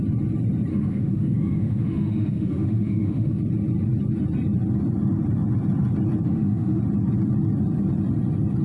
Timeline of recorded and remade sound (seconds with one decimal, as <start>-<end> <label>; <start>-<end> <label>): 0.0-0.7 recorded; 0.7-3.4 remade; 3.4-6.3 recorded; 6.3-6.8 remade; 6.8-8.6 recorded